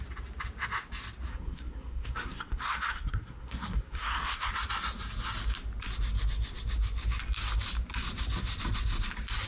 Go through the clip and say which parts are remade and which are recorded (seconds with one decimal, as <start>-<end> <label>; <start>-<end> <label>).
0.0-1.3 recorded; 1.3-4.5 remade; 4.5-9.5 recorded